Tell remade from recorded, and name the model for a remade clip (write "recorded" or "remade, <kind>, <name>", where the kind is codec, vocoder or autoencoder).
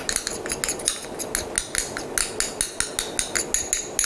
recorded